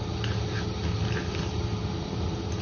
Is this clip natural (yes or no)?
yes